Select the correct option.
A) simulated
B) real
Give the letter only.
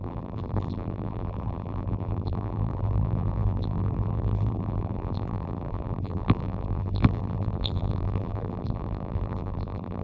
A